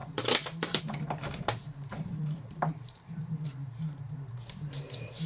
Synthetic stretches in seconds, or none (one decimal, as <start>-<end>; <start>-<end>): 0.0-0.8; 1.9-5.3